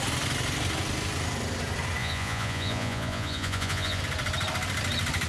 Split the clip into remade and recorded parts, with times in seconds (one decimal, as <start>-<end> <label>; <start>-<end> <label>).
0.0-2.0 recorded; 2.0-4.0 remade; 4.0-5.3 recorded